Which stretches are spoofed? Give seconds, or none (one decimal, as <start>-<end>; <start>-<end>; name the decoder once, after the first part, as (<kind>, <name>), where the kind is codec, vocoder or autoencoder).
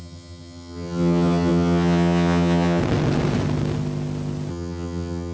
0.0-2.8 (vocoder, HiFi-GAN); 4.5-5.3